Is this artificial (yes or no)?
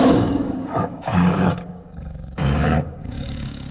yes